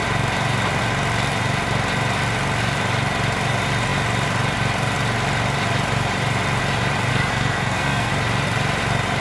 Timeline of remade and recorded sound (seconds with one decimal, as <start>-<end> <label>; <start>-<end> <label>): 0.0-7.1 recorded; 7.1-8.1 remade; 8.1-9.2 recorded